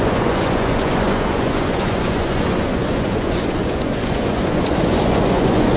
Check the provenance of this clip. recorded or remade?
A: remade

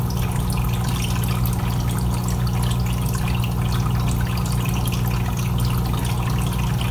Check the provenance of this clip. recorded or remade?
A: recorded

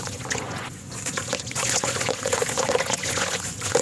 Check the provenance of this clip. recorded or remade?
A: remade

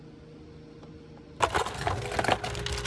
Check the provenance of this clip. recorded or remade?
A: recorded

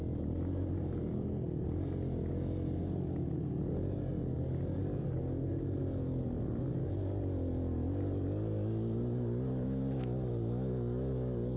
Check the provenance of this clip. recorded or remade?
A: recorded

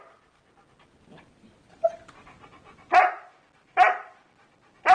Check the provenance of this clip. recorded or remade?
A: recorded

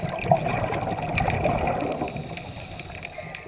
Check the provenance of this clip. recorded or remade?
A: recorded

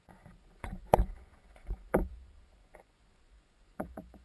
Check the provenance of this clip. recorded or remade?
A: remade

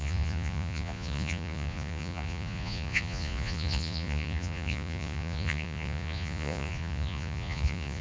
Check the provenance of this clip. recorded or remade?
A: remade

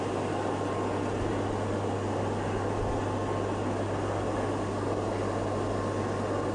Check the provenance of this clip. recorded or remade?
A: recorded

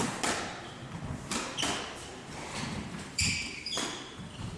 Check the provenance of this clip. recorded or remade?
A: recorded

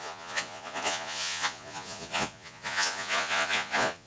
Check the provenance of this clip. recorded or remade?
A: remade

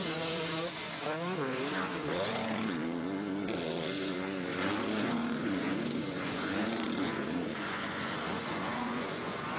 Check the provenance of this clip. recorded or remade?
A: remade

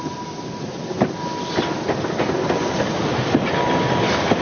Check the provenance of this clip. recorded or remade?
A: recorded